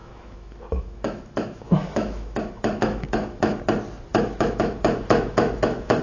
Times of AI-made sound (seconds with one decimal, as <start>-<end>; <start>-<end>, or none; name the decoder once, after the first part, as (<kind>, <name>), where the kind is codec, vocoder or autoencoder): 0.0-3.6 (autoencoder, DAC-VAE); 4.1-6.0